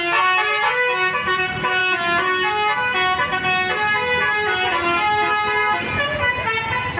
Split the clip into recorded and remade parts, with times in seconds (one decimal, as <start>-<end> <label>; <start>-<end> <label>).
0.0-7.0 recorded